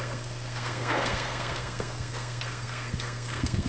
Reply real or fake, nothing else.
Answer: fake